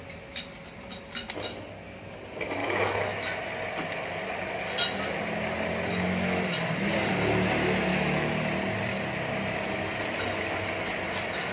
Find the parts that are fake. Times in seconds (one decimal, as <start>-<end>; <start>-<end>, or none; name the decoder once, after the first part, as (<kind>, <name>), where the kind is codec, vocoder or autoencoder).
2.6-3.2 (autoencoder, DAC-VAE); 7.9-8.4

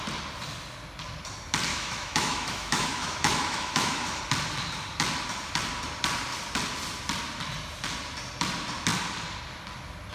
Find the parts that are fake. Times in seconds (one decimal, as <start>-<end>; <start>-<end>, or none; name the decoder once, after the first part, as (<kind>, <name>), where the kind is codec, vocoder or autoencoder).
1.7-4.2 (autoencoder, DAC-VAE)